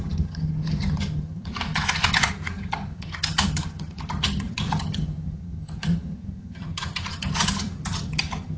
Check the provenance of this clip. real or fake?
fake